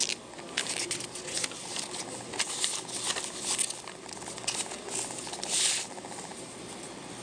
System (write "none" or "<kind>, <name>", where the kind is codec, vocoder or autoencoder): none